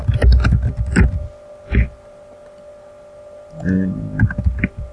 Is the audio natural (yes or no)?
yes